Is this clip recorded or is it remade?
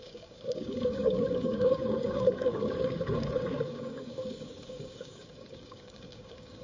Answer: remade